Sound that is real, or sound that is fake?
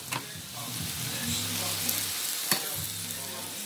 real